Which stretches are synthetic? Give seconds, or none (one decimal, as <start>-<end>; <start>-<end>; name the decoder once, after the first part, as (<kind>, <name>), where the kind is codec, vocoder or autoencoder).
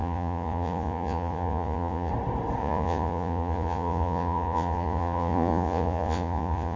0.0-2.1 (vocoder, Vocos); 2.6-6.8